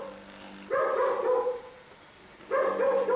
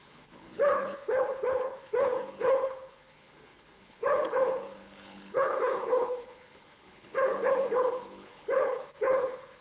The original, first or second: first